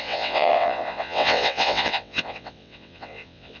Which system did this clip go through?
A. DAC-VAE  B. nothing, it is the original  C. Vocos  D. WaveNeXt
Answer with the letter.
D